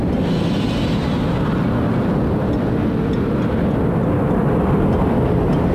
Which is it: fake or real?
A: real